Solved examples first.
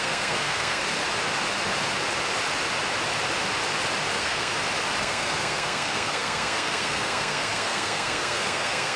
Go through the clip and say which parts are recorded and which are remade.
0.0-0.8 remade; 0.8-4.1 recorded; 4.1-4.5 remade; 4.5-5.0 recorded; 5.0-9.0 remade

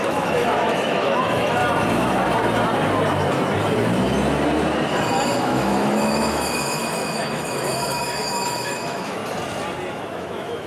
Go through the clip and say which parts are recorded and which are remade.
0.0-1.6 remade; 1.6-5.4 recorded; 5.4-9.2 remade; 9.2-9.9 recorded; 9.9-10.7 remade

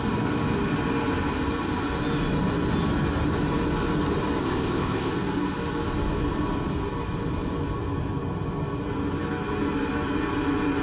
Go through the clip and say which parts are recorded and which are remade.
0.0-4.4 recorded; 4.4-5.1 remade; 5.1-10.8 recorded

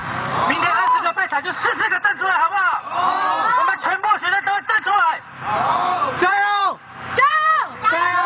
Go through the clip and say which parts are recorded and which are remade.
0.0-8.3 remade

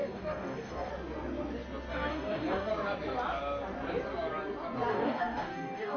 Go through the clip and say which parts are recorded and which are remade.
0.0-0.9 remade; 0.9-1.9 recorded; 1.9-2.7 remade; 2.7-4.9 recorded; 4.9-6.0 remade

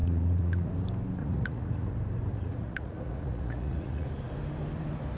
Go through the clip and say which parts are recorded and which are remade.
0.0-0.7 remade; 0.7-1.2 recorded; 1.2-1.9 remade; 1.9-2.3 recorded; 2.3-4.1 remade; 4.1-5.2 recorded

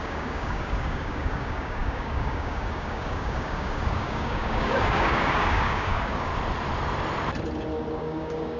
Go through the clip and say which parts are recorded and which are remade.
0.0-6.3 remade; 6.3-7.9 recorded; 7.9-8.6 remade

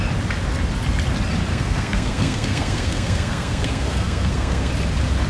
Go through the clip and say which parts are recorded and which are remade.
0.0-1.5 recorded; 1.5-4.7 remade; 4.7-5.3 recorded